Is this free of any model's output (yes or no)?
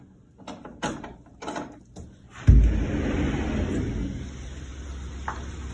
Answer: yes